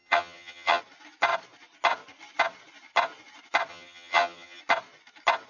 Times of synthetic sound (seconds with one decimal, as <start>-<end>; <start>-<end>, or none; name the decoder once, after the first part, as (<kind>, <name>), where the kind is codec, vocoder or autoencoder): 0.0-0.8 (vocoder, HiFi-GAN); 3.7-4.6